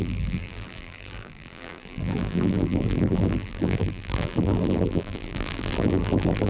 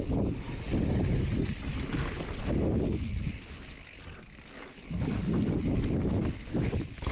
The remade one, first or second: first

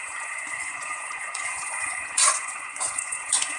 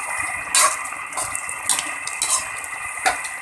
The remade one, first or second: first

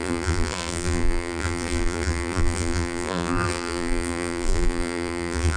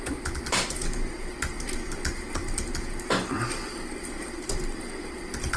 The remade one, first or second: first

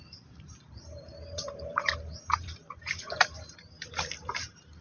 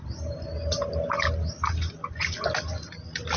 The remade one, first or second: first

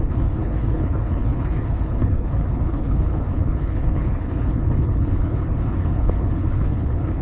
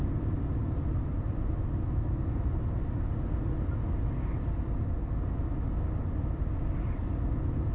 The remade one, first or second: first